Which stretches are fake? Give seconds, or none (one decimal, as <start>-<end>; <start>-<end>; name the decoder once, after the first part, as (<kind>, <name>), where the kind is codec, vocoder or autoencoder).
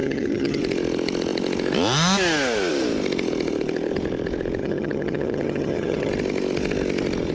0.0-0.6 (vocoder, HiFi-GAN); 4.6-6.1